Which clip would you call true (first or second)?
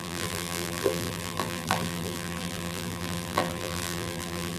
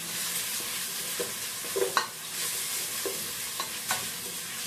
second